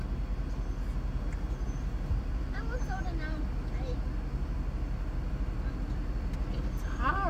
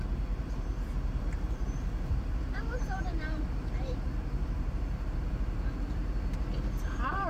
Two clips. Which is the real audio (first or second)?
first